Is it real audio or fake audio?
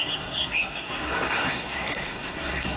fake